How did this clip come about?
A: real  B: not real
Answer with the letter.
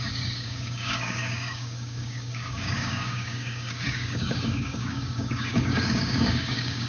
B